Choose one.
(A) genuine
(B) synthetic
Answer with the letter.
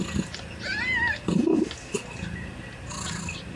A